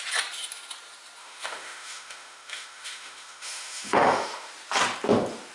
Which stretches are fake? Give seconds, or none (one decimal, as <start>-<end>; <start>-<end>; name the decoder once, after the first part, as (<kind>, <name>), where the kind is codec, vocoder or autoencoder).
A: 1.2-4.5 (autoencoder, DAC-VAE)